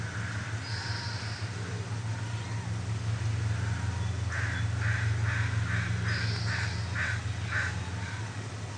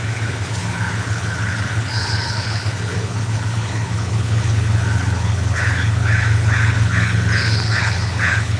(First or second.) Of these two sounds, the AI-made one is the second